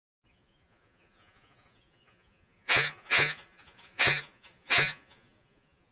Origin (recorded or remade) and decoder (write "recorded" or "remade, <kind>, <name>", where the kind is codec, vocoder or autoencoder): remade, vocoder, Vocos